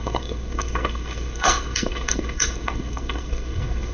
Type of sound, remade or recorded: remade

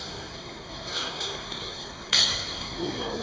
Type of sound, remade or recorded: remade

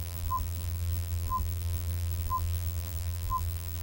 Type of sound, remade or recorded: remade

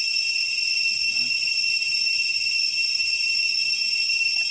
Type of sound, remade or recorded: recorded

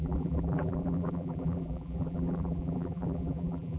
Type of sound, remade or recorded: remade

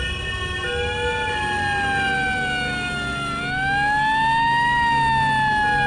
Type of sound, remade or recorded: recorded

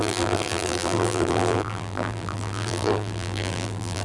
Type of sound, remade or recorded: remade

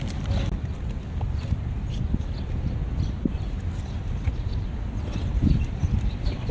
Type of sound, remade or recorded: recorded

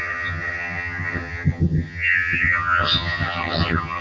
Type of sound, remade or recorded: remade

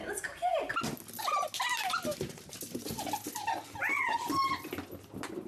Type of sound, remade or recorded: recorded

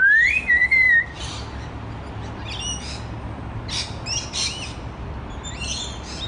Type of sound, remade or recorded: recorded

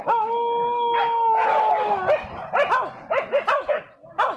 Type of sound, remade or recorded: recorded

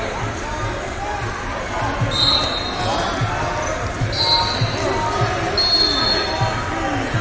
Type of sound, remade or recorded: recorded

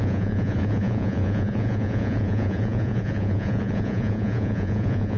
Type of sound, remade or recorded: remade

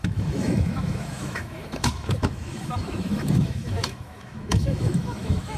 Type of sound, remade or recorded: remade